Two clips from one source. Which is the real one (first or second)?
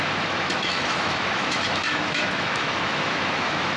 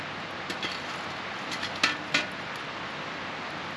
second